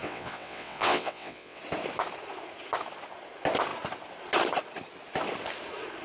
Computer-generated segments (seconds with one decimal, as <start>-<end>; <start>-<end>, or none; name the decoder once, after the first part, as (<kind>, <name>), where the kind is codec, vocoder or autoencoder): 0.0-1.6 (vocoder, WaveNeXt)